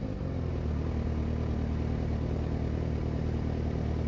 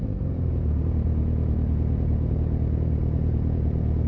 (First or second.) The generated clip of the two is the second